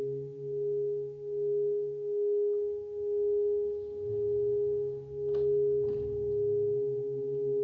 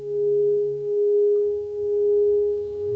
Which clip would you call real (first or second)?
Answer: first